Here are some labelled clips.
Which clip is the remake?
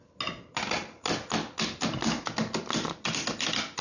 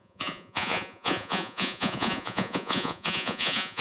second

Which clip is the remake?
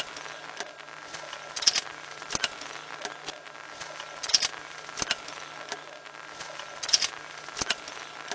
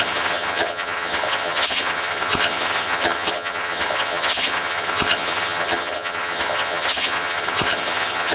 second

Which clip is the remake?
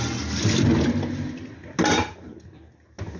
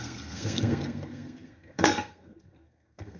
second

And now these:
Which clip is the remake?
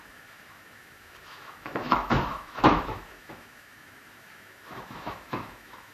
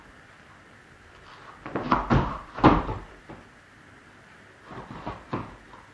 first